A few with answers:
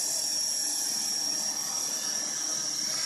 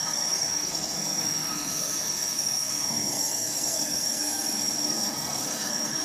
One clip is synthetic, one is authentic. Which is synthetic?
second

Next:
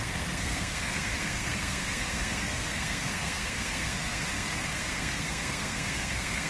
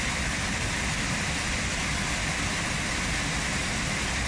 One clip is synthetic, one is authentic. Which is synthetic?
first